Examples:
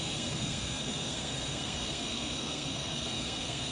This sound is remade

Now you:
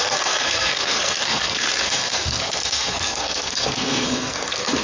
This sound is remade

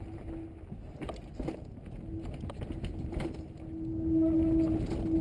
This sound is recorded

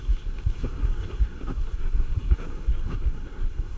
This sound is remade